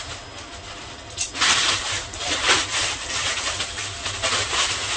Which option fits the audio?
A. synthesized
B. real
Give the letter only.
B